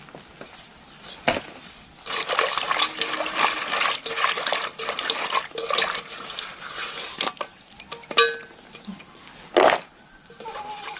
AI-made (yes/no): no